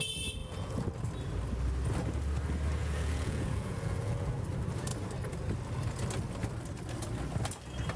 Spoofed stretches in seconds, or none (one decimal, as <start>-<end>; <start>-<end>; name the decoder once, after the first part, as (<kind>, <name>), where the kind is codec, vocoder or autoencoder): 0.4-0.9 (vocoder, Vocos); 2.8-4.4